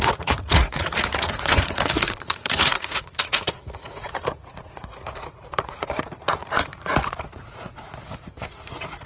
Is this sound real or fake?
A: fake